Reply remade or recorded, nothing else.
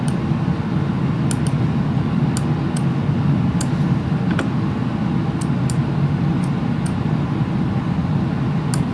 recorded